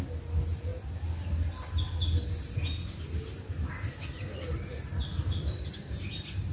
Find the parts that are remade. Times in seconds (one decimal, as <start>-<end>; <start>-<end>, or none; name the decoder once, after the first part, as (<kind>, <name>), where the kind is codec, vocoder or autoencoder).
none